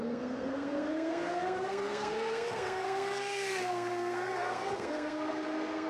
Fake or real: fake